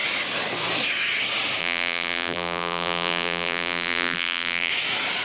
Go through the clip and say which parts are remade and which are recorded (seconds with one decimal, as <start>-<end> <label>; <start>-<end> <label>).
0.0-1.6 recorded; 1.6-4.7 remade; 4.7-5.2 recorded